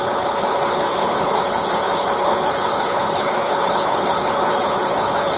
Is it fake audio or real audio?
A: fake